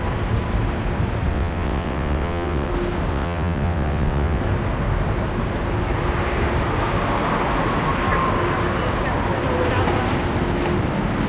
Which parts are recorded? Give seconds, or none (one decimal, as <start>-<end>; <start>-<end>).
0.0-1.3; 2.7-3.1; 4.4-11.3